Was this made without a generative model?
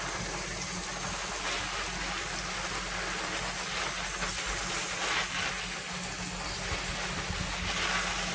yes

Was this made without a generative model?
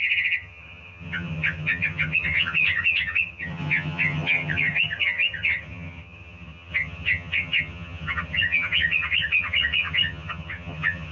no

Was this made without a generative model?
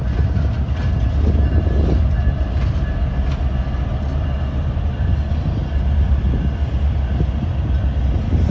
yes